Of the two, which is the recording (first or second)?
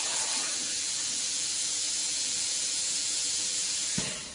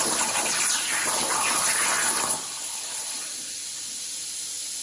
second